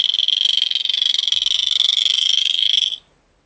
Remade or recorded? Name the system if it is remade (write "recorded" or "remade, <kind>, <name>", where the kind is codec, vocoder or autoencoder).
recorded